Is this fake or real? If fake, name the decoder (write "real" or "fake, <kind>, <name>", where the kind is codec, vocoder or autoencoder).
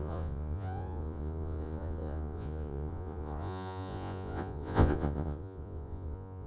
fake, vocoder, Vocos